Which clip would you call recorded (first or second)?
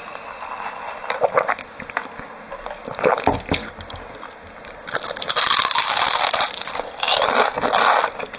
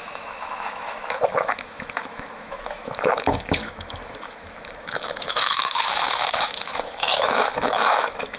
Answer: first